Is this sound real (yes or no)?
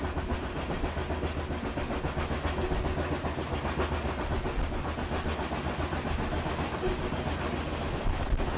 yes